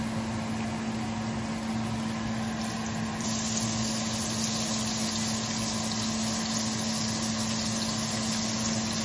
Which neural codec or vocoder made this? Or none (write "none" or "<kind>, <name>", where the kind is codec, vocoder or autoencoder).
none